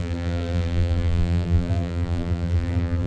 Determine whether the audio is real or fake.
fake